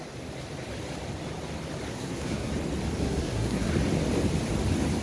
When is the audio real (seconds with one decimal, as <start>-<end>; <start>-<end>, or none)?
0.0-1.9; 2.5-3.0; 3.7-5.0